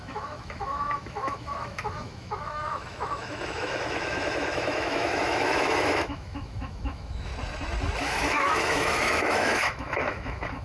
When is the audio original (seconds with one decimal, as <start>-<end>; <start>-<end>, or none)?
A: 7.3-8.0